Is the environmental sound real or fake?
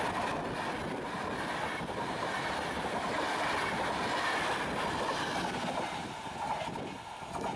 real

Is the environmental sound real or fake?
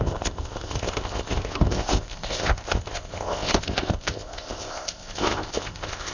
fake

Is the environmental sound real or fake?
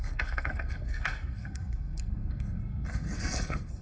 fake